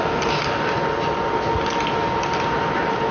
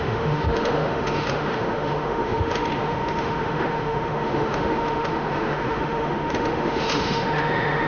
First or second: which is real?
first